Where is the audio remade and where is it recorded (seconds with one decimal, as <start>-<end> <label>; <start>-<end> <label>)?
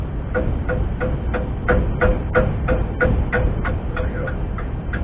0.0-2.1 recorded; 2.1-5.0 remade